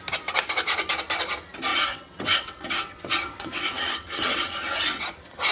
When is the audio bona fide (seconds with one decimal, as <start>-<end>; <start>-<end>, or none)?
0.0-1.7; 5.0-5.5